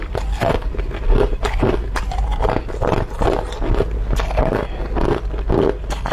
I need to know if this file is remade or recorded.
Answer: recorded